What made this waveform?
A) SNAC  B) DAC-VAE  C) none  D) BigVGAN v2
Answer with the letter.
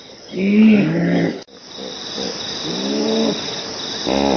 C